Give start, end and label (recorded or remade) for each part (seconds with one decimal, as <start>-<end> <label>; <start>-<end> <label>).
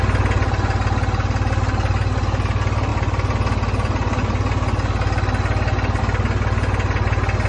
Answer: 0.0-7.5 recorded